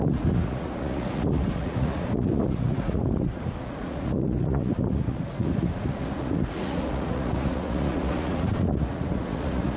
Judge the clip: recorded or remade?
remade